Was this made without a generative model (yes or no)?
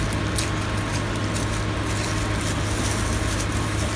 yes